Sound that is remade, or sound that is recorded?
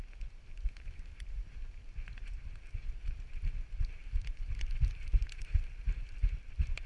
recorded